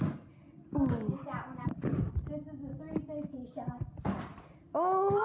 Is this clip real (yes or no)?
yes